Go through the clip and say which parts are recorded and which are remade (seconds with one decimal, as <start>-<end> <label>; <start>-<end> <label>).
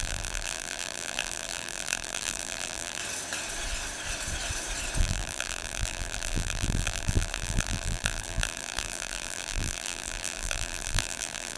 0.0-3.0 remade; 3.0-5.0 recorded; 5.0-11.6 remade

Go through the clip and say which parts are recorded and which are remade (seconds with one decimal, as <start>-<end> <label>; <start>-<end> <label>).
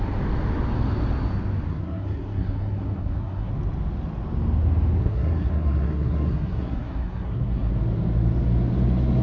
0.0-1.7 recorded; 1.7-3.5 remade; 3.5-5.0 recorded; 5.0-7.7 remade; 7.7-9.2 recorded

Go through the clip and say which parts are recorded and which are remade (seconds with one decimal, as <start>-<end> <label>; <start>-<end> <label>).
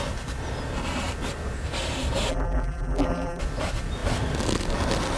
0.0-2.3 recorded; 2.3-3.4 remade; 3.4-5.2 recorded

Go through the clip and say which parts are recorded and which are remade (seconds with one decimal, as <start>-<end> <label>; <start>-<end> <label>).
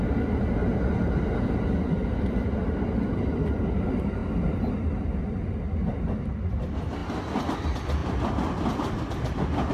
0.0-0.6 recorded; 0.6-1.5 remade; 1.5-4.2 recorded; 4.2-4.7 remade; 4.7-8.0 recorded; 8.0-9.7 remade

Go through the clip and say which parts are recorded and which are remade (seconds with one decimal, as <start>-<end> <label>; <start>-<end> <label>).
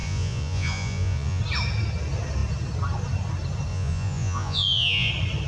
0.0-1.4 remade; 1.4-3.7 recorded; 3.7-5.1 remade; 5.1-5.5 recorded